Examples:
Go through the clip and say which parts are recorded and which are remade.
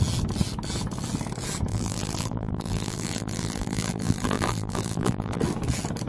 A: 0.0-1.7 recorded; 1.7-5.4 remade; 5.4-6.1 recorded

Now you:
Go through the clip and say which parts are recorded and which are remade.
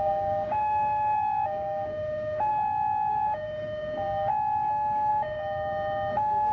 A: 0.0-2.5 remade; 2.5-3.1 recorded; 3.1-4.3 remade; 4.3-5.1 recorded; 5.1-6.5 remade